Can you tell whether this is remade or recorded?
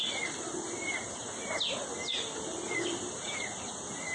recorded